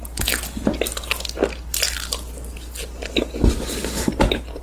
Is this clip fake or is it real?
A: real